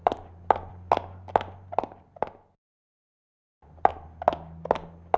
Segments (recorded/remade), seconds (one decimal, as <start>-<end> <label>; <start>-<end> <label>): 0.0-0.9 remade; 0.9-2.8 recorded; 2.8-3.9 remade; 3.9-5.2 recorded